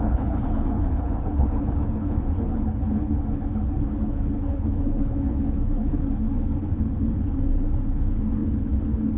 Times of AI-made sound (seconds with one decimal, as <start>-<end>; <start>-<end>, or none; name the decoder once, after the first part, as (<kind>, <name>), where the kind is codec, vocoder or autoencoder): 0.0-9.2 (codec, HILCodec)